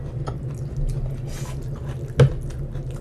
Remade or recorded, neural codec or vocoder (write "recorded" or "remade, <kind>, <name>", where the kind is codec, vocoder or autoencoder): recorded